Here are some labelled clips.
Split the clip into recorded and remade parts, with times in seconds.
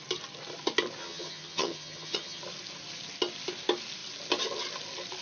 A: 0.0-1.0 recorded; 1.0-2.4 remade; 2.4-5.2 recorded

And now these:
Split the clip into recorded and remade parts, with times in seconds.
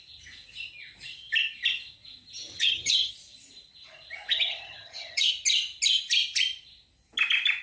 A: 0.0-2.5 recorded; 2.5-3.1 remade; 3.1-4.3 recorded; 4.3-5.3 remade; 5.3-7.6 recorded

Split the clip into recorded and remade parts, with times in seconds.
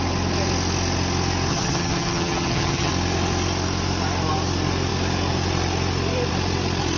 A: 0.0-1.5 recorded; 1.5-2.9 remade; 2.9-7.0 recorded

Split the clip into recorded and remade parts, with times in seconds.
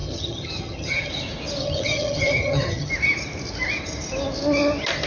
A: 0.0-1.1 remade; 1.1-1.6 recorded; 1.6-2.9 remade; 2.9-5.1 recorded